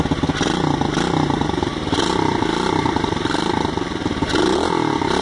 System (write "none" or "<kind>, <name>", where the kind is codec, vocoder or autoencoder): none